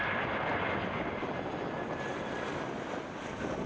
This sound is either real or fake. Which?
fake